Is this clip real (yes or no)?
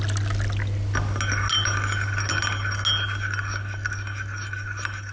yes